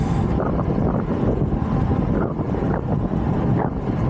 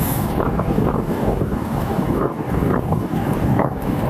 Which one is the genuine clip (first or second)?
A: first